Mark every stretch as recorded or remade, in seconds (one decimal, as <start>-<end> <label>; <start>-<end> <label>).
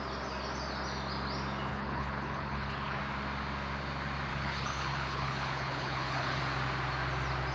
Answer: 0.0-1.7 recorded; 1.7-3.0 remade; 3.0-4.3 recorded; 4.3-6.4 remade; 6.4-7.5 recorded